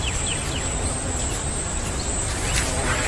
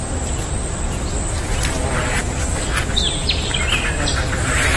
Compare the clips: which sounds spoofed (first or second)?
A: first